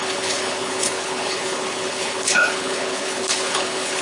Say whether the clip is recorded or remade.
remade